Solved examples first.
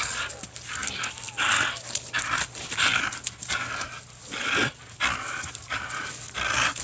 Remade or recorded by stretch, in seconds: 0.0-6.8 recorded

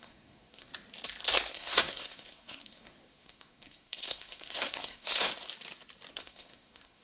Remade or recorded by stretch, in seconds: 0.0-0.7 remade; 0.7-1.5 recorded; 1.5-5.3 remade; 5.3-6.1 recorded; 6.1-7.0 remade

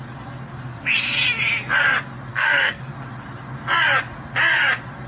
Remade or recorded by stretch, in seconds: 0.0-2.3 recorded; 2.3-2.8 remade; 2.8-5.1 recorded

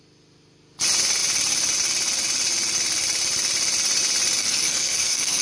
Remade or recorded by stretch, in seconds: 0.0-4.4 recorded; 4.4-5.4 remade